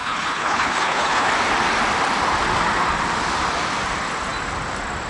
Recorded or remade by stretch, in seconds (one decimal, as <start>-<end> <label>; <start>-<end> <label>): 0.0-1.3 remade; 1.3-5.1 recorded